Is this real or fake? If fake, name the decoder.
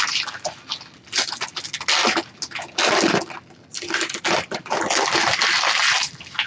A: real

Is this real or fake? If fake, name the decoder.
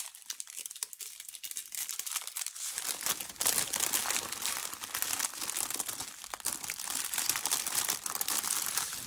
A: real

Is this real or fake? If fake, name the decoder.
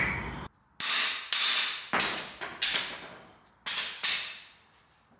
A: real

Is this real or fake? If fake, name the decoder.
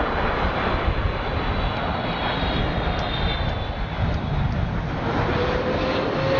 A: real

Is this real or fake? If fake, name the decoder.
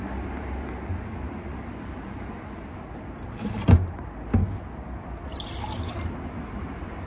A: real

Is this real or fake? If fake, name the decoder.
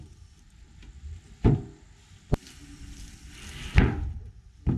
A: real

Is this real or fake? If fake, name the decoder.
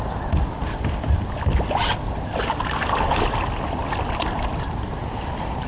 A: real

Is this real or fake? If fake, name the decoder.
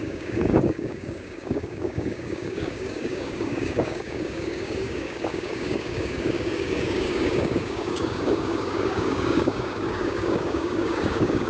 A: fake, codec, DAC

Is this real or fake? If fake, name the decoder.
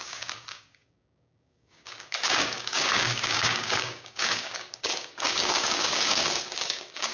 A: fake, codec, DAC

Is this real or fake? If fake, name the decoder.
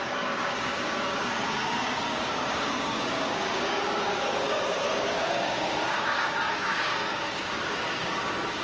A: fake, codec, DAC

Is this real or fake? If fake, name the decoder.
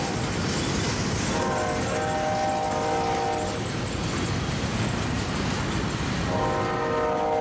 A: real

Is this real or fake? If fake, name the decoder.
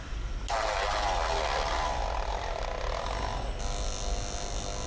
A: real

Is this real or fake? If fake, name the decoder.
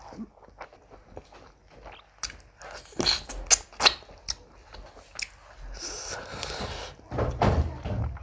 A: real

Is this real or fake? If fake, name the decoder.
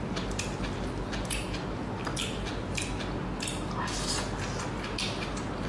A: real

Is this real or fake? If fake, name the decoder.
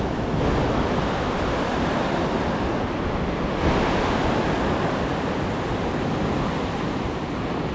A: real